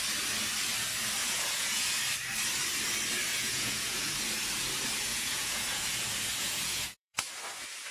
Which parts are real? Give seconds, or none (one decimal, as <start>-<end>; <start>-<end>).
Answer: 0.0-1.2; 2.0-3.3; 4.1-5.1; 7.3-7.9